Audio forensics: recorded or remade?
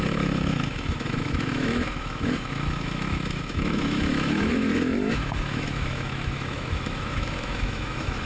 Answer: remade